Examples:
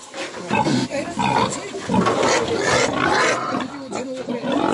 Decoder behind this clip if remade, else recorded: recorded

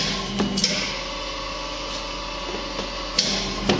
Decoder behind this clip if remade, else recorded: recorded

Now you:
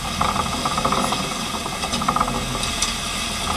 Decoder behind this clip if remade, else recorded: recorded